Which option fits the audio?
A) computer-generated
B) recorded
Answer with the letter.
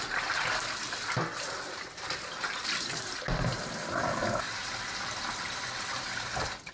A